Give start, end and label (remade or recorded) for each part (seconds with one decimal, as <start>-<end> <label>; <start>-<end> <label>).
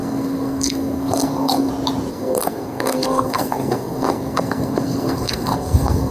0.0-1.7 remade; 1.7-2.1 recorded; 2.1-6.1 remade